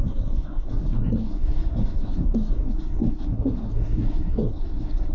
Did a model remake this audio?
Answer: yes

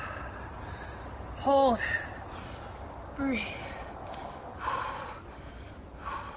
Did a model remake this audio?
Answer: no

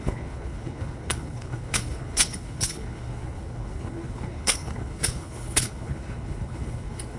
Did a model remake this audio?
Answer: yes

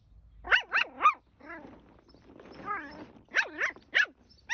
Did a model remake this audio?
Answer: no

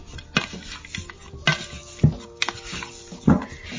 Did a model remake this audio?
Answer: no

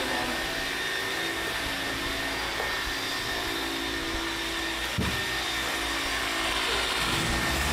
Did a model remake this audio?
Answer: no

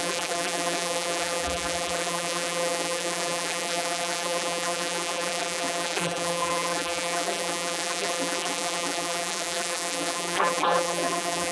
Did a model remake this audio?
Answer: yes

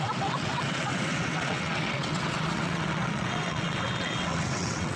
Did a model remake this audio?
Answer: yes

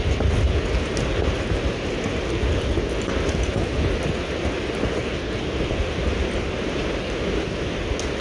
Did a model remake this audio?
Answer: no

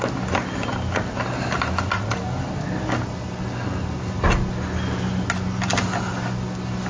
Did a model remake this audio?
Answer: no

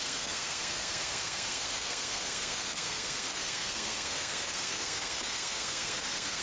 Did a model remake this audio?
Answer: yes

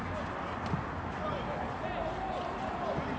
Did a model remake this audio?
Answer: no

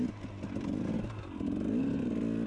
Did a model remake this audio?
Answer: no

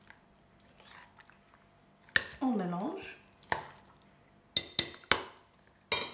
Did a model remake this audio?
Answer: no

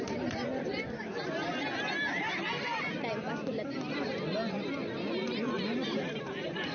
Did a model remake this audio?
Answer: yes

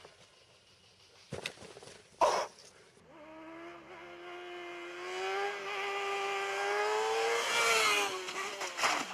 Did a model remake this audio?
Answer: no